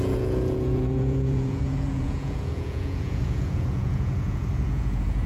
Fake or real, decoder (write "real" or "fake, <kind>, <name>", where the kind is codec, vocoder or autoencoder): fake, vocoder, Vocos